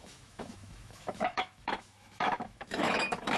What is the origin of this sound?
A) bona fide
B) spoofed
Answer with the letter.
B